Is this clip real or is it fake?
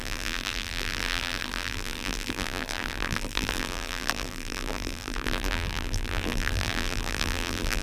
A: fake